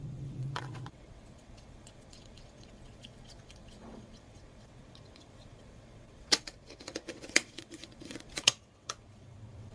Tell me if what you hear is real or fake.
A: fake